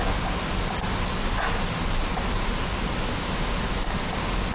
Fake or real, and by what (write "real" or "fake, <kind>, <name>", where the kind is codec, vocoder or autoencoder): real